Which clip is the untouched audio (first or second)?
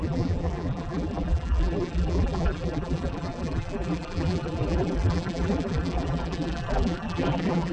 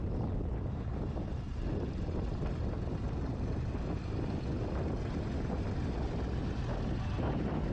second